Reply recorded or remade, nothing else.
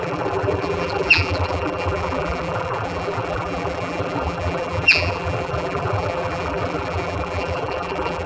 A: remade